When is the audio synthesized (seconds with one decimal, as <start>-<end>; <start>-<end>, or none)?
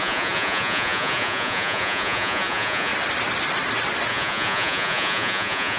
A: 0.0-2.9; 4.1-5.8